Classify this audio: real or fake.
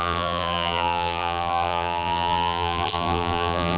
fake